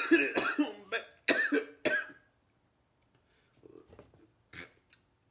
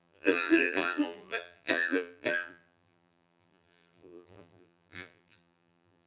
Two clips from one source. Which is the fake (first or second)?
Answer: second